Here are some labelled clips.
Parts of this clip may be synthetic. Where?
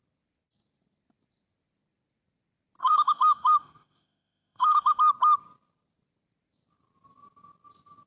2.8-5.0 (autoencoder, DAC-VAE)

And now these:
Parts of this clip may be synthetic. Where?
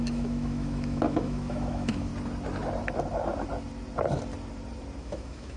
0.0-2.1 (autoencoder, DAC-VAE); 5.0-5.6